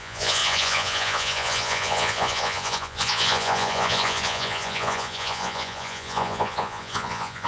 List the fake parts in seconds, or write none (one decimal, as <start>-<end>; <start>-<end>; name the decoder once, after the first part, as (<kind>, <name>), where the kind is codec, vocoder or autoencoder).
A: 0.0-7.5 (vocoder, Vocos)